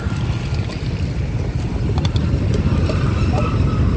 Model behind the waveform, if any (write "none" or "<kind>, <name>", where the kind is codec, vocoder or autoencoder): none